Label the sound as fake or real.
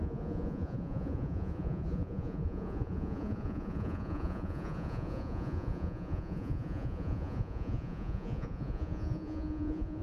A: fake